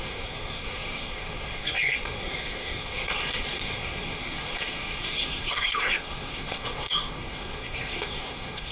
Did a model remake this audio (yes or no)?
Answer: yes